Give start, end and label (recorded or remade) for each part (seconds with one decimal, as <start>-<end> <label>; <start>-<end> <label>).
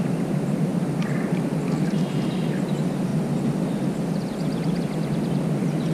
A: 0.0-0.7 recorded; 0.7-1.3 remade; 1.3-5.9 recorded